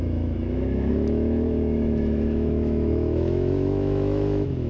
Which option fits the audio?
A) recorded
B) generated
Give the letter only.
B